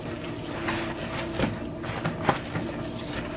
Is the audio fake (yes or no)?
no